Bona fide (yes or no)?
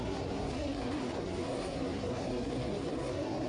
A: no